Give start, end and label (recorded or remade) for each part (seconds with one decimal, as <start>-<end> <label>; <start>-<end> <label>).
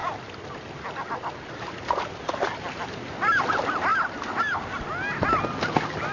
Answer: 0.0-6.1 recorded